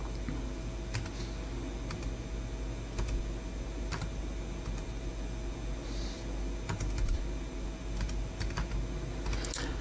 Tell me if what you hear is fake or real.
real